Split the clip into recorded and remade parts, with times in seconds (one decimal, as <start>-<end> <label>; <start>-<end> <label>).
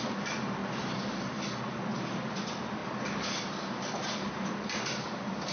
0.0-5.5 recorded